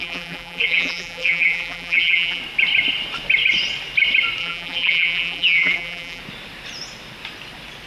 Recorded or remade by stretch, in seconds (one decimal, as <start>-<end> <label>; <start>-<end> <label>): 0.0-2.4 remade; 2.4-4.4 recorded; 4.4-6.2 remade; 6.2-7.9 recorded